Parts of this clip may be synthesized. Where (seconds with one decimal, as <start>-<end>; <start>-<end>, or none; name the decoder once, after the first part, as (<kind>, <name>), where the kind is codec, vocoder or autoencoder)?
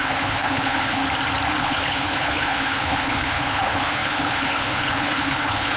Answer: 0.0-1.0 (codec, HILCodec); 1.6-5.8